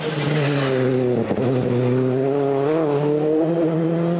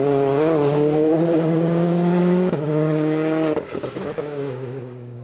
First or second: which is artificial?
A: second